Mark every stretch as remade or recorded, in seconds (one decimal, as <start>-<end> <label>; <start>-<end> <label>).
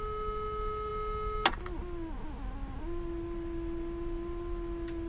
0.0-5.1 recorded